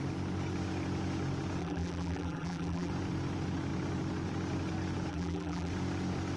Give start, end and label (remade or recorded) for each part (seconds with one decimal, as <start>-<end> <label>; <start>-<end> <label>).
0.0-1.6 recorded; 1.6-2.9 remade; 2.9-5.1 recorded; 5.1-5.7 remade; 5.7-6.4 recorded